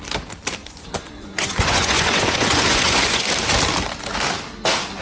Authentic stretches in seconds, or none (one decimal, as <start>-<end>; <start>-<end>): 0.0-0.6; 3.3-5.0